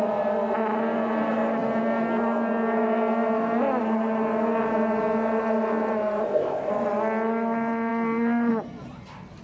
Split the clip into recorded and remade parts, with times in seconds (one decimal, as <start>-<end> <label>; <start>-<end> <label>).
0.0-6.2 recorded; 6.2-6.7 remade; 6.7-9.4 recorded